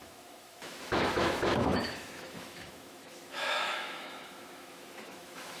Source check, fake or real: fake